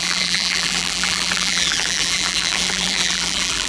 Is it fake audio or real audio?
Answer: fake